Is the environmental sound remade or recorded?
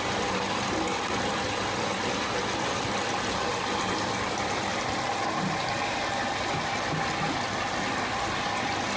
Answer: recorded